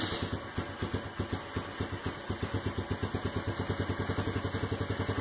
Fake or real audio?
real